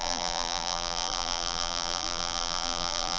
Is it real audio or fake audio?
fake